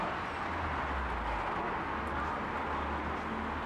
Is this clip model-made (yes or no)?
no